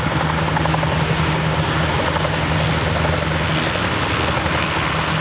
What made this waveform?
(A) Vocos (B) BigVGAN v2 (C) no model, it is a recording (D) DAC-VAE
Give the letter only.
C